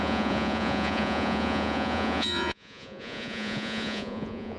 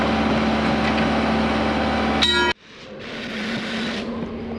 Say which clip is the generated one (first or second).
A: first